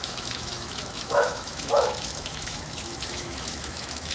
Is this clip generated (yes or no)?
yes